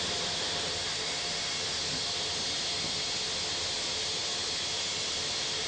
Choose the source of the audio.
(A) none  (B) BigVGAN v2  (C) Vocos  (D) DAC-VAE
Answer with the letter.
A